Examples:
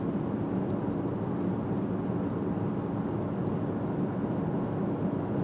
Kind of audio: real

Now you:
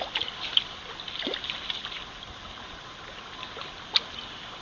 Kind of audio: real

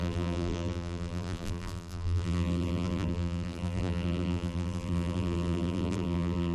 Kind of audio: fake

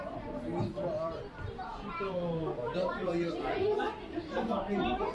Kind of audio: fake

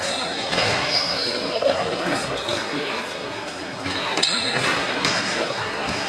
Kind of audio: fake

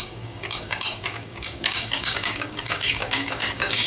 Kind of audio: fake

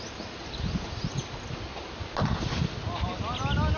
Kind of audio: real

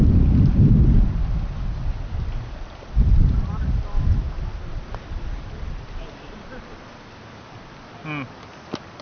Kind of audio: real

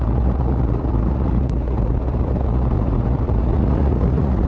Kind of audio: fake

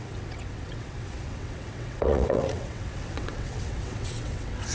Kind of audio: fake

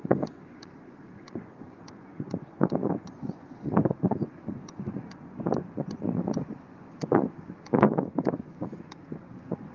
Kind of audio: fake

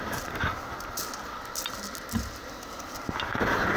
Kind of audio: real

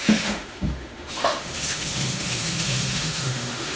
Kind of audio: fake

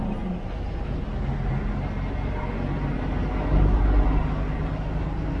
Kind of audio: real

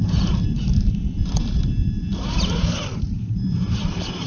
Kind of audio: fake